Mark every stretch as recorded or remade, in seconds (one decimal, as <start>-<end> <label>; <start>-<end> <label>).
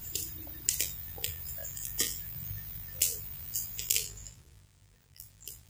0.0-0.8 recorded; 0.8-5.7 remade